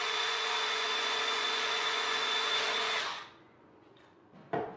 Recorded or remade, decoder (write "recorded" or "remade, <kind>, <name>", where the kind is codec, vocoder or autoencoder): remade, vocoder, Vocos